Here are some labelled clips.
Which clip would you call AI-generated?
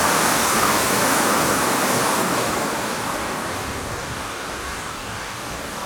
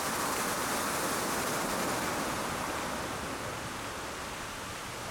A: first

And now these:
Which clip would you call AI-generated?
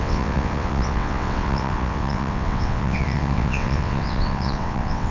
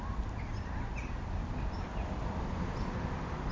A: first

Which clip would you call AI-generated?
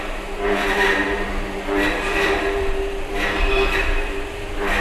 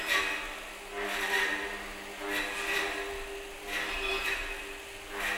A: first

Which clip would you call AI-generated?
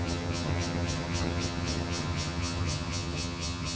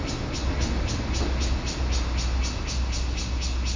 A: first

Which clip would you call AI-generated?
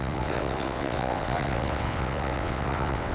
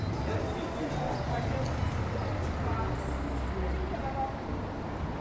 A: first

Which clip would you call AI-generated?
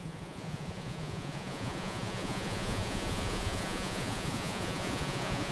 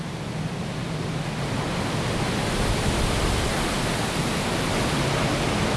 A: first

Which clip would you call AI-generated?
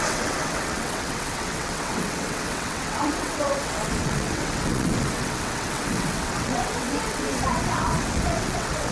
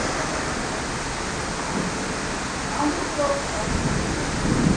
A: first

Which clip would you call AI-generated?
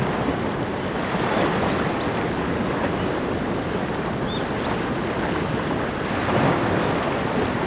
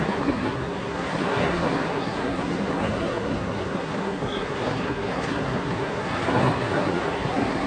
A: second